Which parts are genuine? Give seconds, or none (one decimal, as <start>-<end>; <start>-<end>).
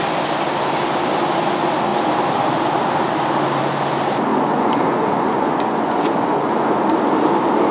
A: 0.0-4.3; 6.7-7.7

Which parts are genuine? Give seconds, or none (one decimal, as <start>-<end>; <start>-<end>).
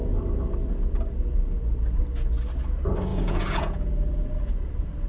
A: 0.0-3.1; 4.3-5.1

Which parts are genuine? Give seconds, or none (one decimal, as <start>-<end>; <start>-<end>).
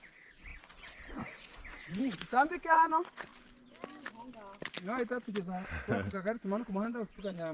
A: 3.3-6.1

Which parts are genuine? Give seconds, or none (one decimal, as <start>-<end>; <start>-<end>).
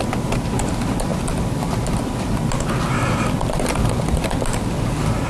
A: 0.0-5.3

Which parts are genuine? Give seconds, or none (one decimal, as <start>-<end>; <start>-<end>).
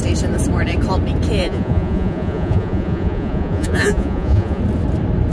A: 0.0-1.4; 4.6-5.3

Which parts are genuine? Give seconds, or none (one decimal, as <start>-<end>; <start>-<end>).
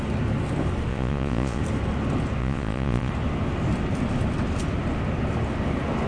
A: 0.0-0.9; 1.6-2.4; 3.1-6.1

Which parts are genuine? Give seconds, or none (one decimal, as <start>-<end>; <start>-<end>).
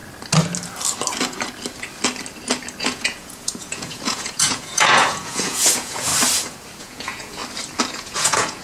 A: 0.0-2.8; 6.1-6.8; 7.4-7.9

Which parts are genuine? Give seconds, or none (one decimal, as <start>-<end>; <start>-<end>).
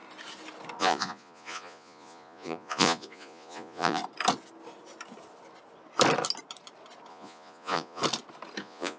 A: 0.0-0.8; 4.0-7.1; 8.0-8.6